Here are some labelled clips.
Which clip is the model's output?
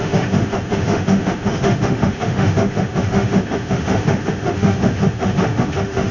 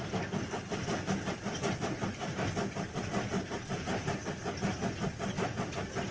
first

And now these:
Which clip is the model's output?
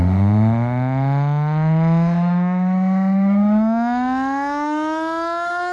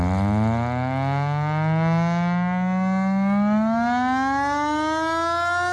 first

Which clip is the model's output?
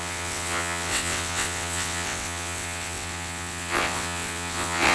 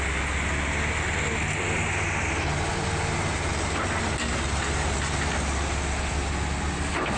first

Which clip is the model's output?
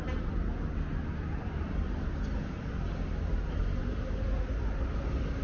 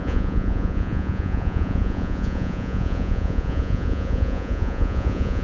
second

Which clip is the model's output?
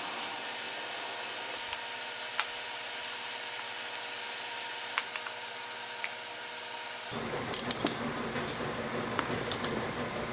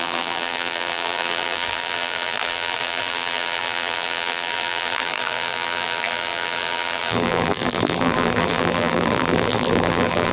second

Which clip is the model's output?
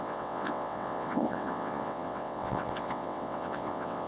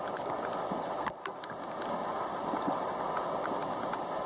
first